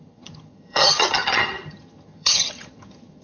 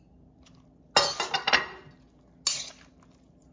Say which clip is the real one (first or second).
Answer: second